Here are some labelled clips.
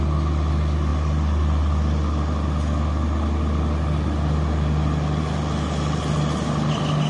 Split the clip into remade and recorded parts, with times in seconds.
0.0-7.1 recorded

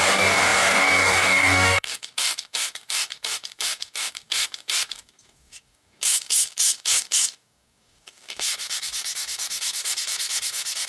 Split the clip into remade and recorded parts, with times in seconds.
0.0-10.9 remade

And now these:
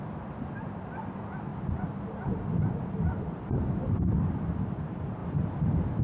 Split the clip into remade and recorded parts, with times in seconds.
0.0-1.5 recorded; 1.5-4.3 remade; 4.3-5.2 recorded; 5.2-6.0 remade

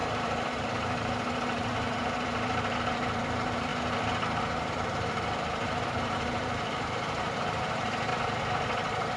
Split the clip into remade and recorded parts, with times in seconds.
0.0-3.7 remade; 3.7-4.4 recorded; 4.4-8.1 remade; 8.1-9.2 recorded

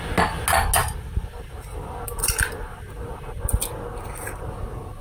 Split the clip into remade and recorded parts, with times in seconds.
0.0-0.8 recorded; 0.8-3.8 remade; 3.8-5.0 recorded